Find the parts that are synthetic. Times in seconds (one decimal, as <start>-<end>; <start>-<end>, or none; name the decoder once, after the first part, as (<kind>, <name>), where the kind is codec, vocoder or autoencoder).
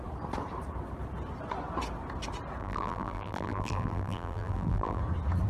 2.6-5.0 (vocoder, BigVGAN v2)